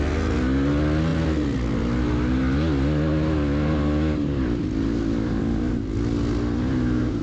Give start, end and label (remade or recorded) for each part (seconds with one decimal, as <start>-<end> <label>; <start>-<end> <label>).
0.0-7.2 recorded